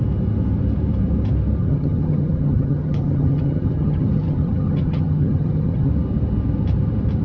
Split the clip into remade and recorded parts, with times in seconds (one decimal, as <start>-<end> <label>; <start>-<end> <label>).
0.0-1.6 recorded; 1.6-5.9 remade; 5.9-7.2 recorded